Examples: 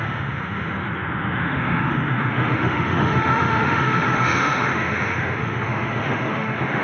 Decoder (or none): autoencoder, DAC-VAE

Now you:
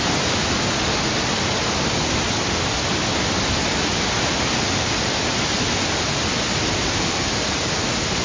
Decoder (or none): none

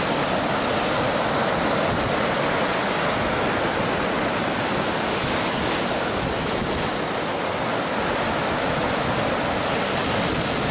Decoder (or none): none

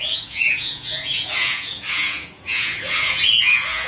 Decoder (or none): vocoder, Vocos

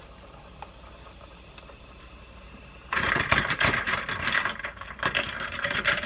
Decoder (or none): vocoder, BigVGAN v2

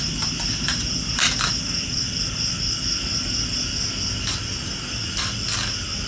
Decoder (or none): none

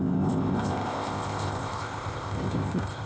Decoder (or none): codec, ZipCodec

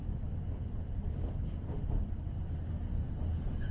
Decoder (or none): none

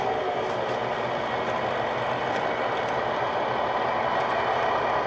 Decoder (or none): none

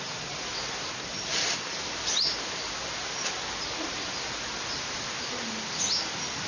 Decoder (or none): none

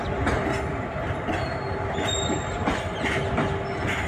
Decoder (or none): none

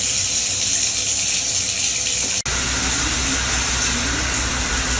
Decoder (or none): none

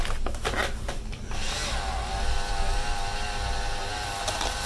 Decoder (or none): none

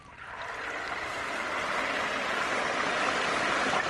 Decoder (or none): none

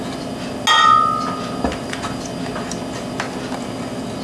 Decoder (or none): none